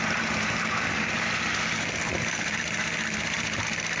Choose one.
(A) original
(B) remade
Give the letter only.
A